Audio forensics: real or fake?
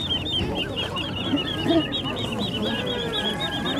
real